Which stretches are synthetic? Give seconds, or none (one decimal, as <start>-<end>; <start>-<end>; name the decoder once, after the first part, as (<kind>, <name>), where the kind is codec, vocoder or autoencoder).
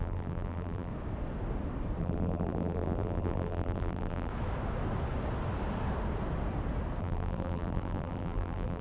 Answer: 0.0-0.9 (vocoder, BigVGAN v2); 2.0-4.3; 7.0-8.8